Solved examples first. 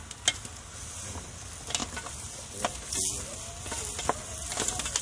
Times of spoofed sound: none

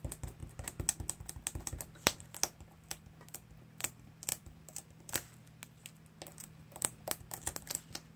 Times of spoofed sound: 4.3-5.1 (vocoder, BigVGAN v2); 6.3-7.1